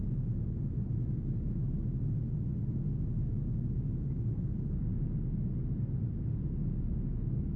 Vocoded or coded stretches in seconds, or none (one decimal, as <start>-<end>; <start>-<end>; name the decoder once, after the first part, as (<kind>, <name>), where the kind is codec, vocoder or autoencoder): none